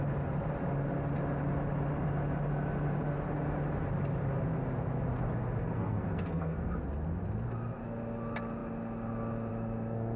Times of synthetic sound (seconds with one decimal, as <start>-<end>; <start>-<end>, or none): 5.6-6.8